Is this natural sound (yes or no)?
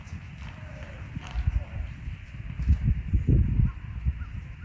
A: no